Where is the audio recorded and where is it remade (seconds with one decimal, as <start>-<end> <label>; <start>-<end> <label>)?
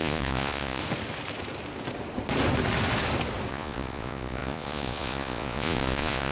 0.0-0.8 remade; 0.8-3.5 recorded; 3.5-6.3 remade